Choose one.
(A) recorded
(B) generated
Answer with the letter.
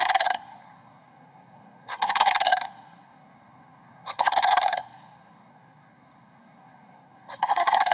B